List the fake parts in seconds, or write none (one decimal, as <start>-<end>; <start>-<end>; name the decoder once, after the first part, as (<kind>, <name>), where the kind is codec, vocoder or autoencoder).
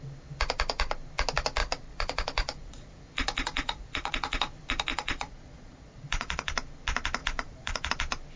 1.6-4.4 (vocoder, Vocos); 4.9-6.5; 7.2-7.9